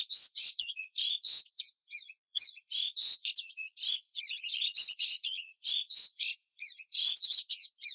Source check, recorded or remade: remade